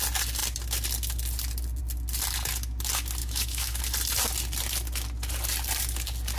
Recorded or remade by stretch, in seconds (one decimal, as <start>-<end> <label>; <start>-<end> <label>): 0.0-3.2 recorded; 3.2-3.8 remade; 3.8-6.4 recorded